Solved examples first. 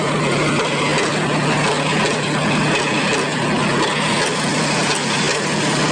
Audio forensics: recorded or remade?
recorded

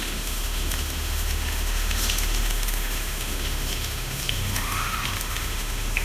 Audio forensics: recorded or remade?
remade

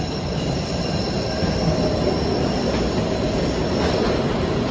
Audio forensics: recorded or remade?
recorded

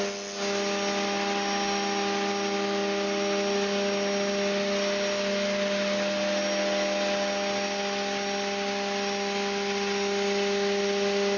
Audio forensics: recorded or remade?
recorded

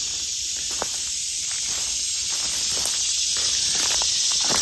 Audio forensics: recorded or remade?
recorded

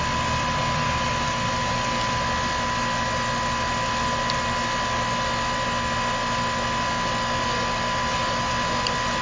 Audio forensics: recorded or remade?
recorded